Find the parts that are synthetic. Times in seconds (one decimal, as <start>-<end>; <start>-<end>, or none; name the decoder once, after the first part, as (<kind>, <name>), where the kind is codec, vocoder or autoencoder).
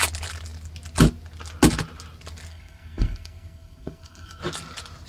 2.5-4.4 (codec, SNAC)